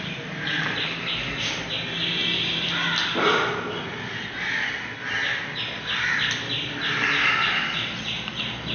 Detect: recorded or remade recorded